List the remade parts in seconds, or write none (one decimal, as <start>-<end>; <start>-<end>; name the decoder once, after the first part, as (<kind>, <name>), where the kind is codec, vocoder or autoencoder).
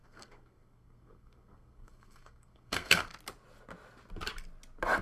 0.0-3.0 (codec, SNAC)